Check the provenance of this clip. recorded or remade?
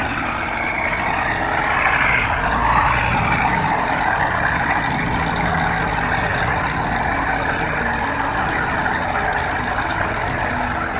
recorded